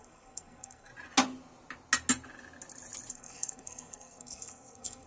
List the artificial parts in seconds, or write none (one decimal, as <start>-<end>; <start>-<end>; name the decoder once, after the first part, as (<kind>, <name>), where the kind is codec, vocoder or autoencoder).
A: 0.0-0.9 (codec, SNAC); 3.1-5.1